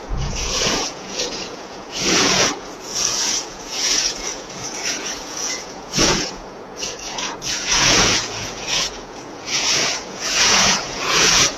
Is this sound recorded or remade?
remade